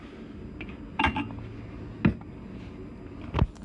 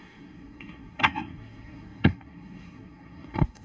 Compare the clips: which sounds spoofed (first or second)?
second